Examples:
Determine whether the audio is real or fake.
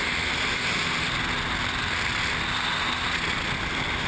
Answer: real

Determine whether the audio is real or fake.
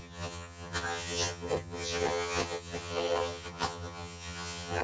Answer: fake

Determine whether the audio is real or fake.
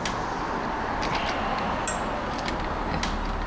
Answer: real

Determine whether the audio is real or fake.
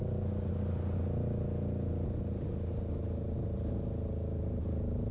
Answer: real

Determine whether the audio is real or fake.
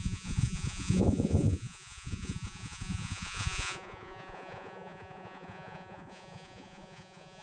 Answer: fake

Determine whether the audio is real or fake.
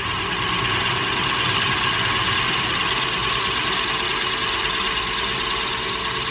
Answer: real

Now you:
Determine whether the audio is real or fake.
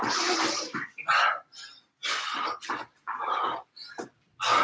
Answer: real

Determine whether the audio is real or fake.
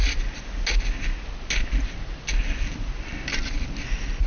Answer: real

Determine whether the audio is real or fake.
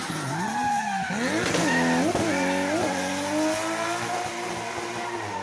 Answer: real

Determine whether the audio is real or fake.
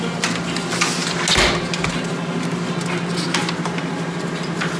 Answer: real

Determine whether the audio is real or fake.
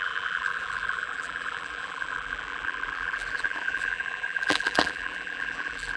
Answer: fake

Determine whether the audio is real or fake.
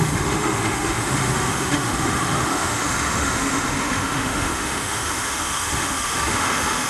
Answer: fake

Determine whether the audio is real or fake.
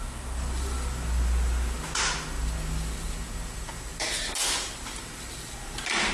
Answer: real